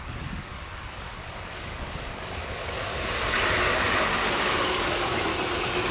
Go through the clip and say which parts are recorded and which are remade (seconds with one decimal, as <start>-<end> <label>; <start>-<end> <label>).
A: 0.0-5.3 remade; 5.3-5.9 recorded